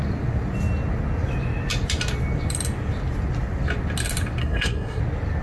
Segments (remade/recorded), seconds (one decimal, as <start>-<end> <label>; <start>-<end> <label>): 0.0-4.4 recorded; 4.4-5.0 remade; 5.0-5.4 recorded